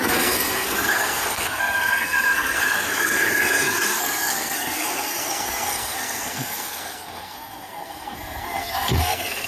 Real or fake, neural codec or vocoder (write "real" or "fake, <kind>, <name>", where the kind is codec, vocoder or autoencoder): fake, codec, SNAC